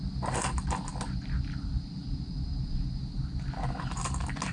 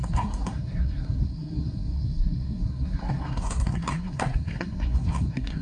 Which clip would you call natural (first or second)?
first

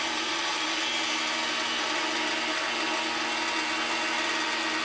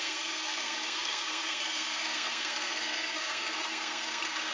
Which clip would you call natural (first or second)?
first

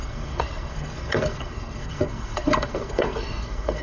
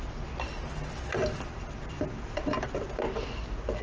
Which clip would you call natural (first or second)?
second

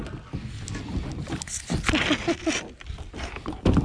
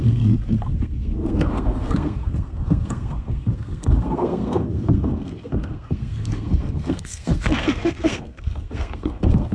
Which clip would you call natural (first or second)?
first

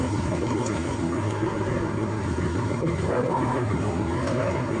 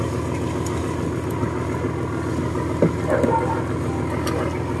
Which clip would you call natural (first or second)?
second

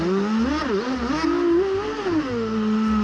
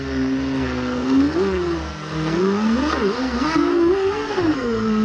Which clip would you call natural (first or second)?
first